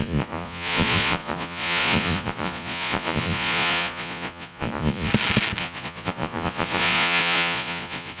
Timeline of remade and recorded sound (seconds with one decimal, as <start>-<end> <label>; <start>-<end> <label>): 0.0-5.1 remade; 5.1-5.6 recorded; 5.6-8.2 remade